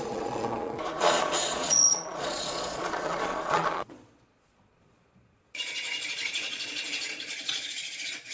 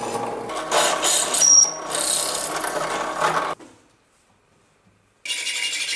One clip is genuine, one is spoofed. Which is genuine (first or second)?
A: second